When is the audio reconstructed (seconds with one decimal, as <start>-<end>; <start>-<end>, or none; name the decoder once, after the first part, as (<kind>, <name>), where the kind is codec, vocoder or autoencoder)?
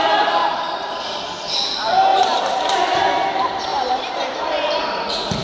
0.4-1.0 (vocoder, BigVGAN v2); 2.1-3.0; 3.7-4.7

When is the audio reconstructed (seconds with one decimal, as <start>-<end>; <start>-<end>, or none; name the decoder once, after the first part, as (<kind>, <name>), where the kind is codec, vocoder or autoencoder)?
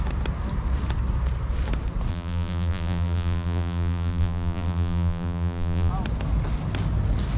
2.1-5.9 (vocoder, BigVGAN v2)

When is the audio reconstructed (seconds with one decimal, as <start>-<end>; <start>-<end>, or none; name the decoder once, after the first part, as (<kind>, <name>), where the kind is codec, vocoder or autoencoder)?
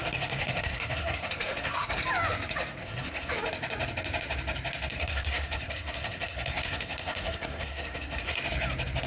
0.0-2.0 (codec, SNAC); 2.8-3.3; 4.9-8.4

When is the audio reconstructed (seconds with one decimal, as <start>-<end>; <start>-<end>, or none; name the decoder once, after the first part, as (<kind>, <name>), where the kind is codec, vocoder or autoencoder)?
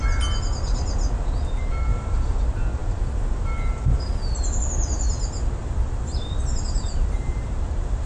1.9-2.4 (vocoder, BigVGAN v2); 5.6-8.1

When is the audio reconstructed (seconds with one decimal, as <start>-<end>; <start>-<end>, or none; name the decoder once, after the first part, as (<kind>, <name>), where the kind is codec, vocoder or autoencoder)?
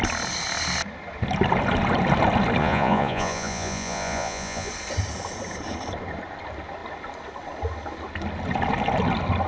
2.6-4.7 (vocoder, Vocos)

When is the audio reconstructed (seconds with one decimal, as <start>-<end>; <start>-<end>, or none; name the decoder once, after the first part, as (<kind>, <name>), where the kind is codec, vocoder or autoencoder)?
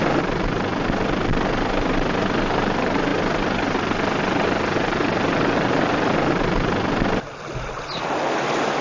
none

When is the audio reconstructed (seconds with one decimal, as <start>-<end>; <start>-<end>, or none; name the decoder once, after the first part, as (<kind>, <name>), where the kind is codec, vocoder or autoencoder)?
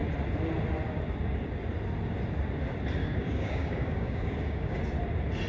3.0-4.8 (codec, DAC)